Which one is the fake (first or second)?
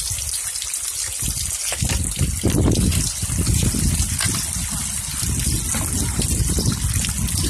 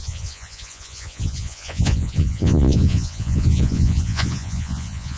second